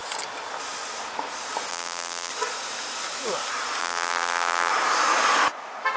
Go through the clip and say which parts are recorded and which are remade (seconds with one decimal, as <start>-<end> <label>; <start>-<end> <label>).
0.0-1.7 recorded; 1.7-2.3 remade; 2.3-3.8 recorded; 3.8-4.7 remade; 4.7-6.0 recorded